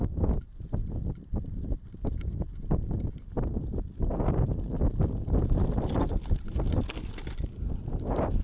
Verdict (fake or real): real